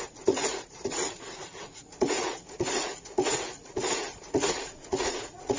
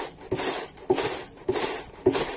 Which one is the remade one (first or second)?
first